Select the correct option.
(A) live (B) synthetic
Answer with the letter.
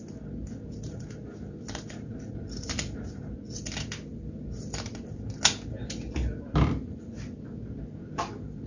A